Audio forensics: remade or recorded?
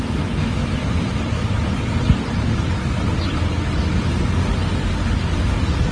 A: recorded